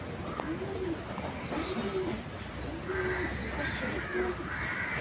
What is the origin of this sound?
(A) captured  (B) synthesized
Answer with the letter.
A